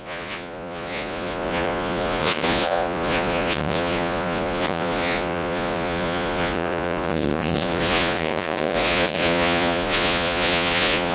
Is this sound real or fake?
fake